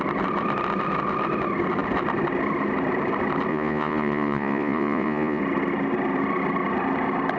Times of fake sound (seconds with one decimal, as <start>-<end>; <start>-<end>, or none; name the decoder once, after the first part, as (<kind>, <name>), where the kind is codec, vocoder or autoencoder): 3.5-5.4 (vocoder, Vocos)